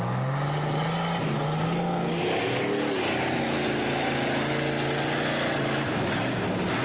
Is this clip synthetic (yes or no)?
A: no